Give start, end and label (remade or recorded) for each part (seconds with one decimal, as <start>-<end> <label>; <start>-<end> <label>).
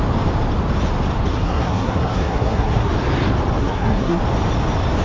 0.0-1.3 recorded; 1.3-2.9 remade; 2.9-3.6 recorded; 3.6-4.2 remade; 4.2-5.0 recorded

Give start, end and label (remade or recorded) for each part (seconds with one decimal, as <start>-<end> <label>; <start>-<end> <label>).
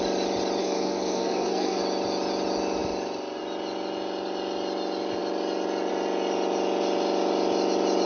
0.0-0.6 recorded; 0.6-1.8 remade; 1.8-8.1 recorded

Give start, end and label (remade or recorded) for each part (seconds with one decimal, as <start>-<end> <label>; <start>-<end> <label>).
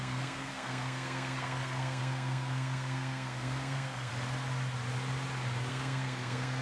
0.0-4.1 remade; 4.1-5.7 recorded; 5.7-6.6 remade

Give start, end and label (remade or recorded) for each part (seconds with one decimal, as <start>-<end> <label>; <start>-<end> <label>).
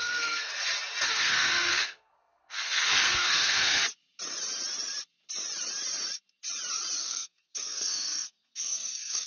0.0-0.5 remade; 0.5-1.1 recorded; 1.1-3.8 remade; 3.8-7.0 recorded; 7.0-9.3 remade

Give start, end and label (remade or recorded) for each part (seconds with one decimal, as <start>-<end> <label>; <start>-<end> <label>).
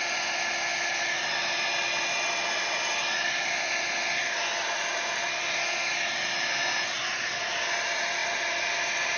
0.0-9.2 recorded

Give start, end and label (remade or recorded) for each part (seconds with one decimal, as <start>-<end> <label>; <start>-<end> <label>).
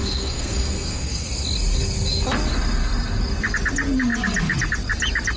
0.0-1.3 remade; 1.3-5.4 recorded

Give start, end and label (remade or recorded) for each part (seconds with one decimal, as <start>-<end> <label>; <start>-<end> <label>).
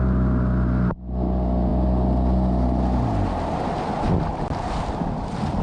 0.0-5.6 recorded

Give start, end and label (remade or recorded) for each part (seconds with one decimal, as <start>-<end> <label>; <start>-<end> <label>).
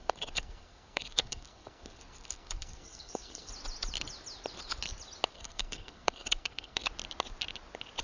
0.0-3.5 remade; 3.5-5.3 recorded; 5.3-6.9 remade; 6.9-8.0 recorded